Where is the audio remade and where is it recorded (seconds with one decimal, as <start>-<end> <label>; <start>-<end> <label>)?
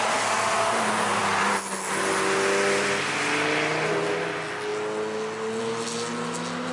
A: 0.0-6.7 recorded